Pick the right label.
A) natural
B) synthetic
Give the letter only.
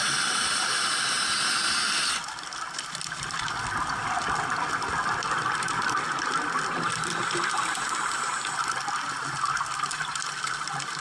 A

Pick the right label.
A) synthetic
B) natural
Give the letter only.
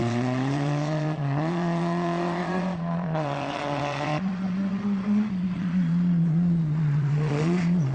A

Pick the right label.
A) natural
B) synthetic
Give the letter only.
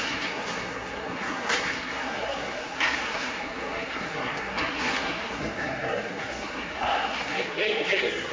B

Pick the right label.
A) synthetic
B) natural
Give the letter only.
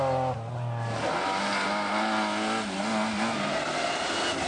B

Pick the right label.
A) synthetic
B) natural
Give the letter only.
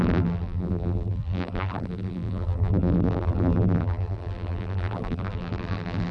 A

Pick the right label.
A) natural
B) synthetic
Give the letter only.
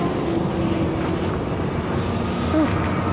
A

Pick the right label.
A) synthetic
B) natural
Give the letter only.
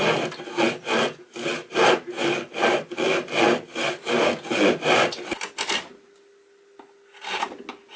B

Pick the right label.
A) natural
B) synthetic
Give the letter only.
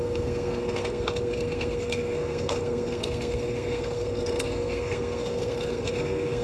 B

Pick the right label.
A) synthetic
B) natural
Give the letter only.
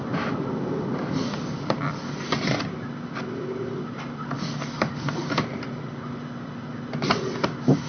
B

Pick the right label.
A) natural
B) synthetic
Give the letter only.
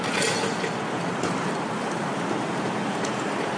A